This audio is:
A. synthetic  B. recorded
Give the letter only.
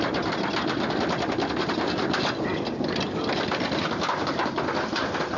B